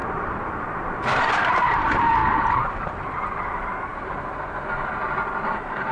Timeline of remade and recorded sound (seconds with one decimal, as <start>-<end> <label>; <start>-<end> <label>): 0.0-2.2 remade; 2.2-3.4 recorded; 3.4-3.9 remade; 3.9-5.5 recorded; 5.5-5.9 remade